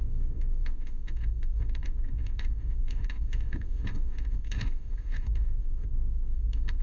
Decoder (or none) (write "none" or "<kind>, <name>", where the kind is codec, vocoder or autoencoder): autoencoder, DAC-VAE